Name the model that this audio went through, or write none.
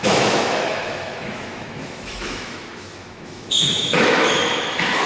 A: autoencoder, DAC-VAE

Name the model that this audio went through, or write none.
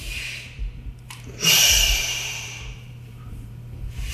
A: vocoder, BigVGAN v2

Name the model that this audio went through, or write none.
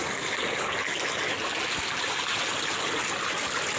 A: none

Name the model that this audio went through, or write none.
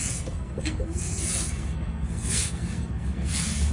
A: codec, SNAC